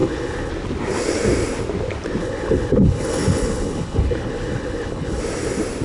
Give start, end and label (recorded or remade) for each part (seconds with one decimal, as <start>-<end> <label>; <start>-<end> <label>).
0.0-0.5 remade; 0.5-2.2 recorded; 2.2-5.2 remade; 5.2-5.8 recorded